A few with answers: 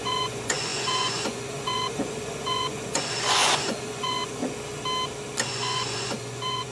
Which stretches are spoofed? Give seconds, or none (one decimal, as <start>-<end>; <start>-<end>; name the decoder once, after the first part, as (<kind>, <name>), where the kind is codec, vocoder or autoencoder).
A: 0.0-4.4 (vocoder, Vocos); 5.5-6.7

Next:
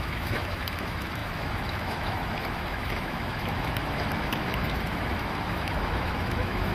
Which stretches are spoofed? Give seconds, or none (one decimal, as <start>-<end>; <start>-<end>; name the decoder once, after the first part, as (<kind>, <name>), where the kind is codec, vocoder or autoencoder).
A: 0.0-6.7 (autoencoder, DAC-VAE)

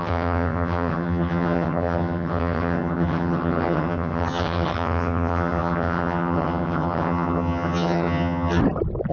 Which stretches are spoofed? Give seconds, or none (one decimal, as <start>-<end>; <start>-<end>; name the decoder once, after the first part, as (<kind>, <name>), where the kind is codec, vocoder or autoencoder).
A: 0.0-8.6 (vocoder, HiFi-GAN)